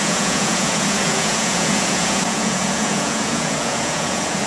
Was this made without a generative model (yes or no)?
no